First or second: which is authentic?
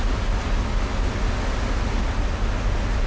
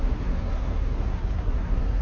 first